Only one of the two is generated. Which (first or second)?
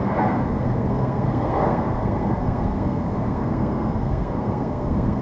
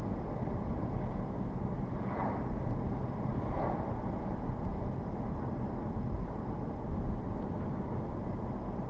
first